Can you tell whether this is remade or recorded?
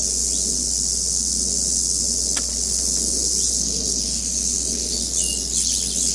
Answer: recorded